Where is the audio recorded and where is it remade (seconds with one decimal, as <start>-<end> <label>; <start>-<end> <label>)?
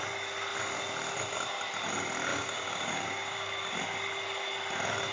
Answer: 0.0-2.3 recorded; 2.3-3.8 remade; 3.8-5.1 recorded